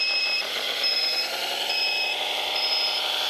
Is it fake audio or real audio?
fake